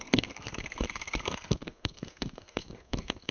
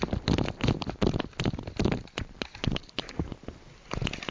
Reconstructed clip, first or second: first